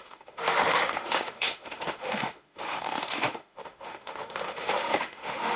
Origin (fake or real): fake